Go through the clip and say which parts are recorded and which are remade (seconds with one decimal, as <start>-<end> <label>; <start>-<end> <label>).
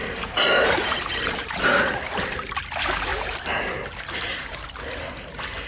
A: 0.0-2.6 remade; 2.6-3.1 recorded; 3.1-5.1 remade; 5.1-5.7 recorded